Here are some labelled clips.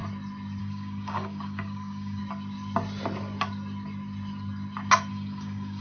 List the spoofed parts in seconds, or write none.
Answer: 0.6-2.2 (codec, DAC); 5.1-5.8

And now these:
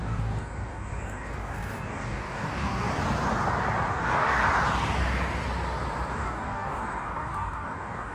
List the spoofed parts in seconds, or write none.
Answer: 0.0-2.9 (codec, DAC); 3.9-4.4; 6.1-8.1

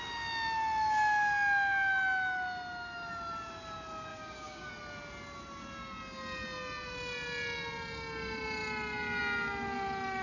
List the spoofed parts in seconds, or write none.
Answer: 4.1-4.7 (codec, DAC)

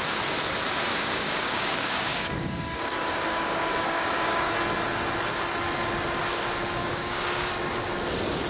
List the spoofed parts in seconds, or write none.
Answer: 0.9-4.5 (codec, DAC); 6.8-7.5

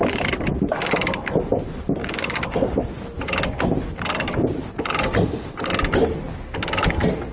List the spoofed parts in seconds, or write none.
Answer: 2.0-2.9 (codec, DAC)

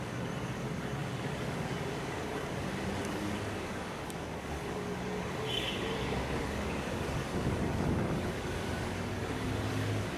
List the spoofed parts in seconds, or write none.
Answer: 0.0-10.2 (codec, DAC)

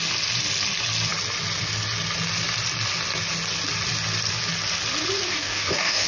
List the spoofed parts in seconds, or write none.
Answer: 5.3-6.1 (codec, DAC)

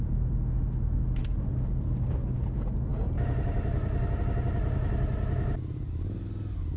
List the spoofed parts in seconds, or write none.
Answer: none